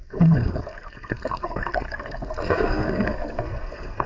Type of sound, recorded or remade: remade